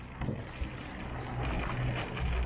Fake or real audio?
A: real